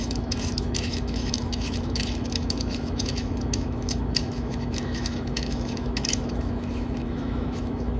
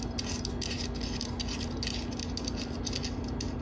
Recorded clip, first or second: second